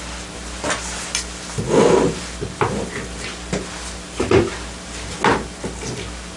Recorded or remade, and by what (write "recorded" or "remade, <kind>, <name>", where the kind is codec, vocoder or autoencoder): recorded